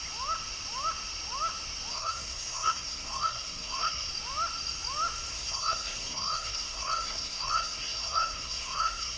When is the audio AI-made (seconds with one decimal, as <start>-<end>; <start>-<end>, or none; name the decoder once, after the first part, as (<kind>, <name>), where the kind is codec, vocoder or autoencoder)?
1.9-4.1 (codec, SNAC); 5.3-9.2